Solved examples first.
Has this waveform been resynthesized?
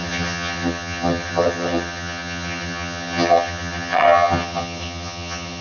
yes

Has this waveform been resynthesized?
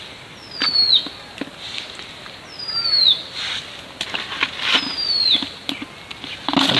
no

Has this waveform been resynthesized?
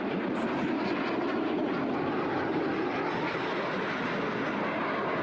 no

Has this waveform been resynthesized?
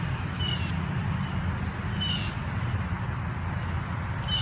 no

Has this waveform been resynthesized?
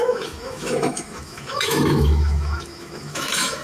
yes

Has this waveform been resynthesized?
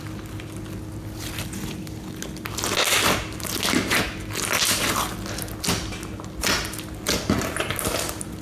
no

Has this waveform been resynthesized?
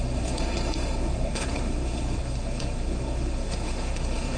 yes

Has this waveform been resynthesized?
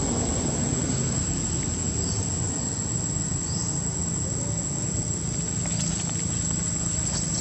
no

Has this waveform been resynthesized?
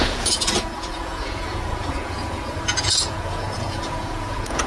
yes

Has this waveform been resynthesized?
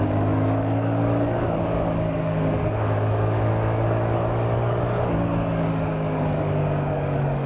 yes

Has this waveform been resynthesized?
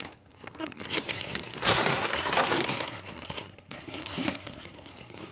yes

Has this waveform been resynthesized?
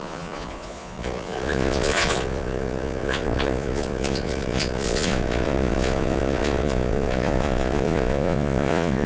yes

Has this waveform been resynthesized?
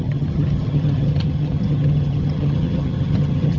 yes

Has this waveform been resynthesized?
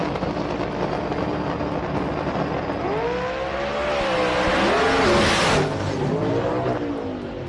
no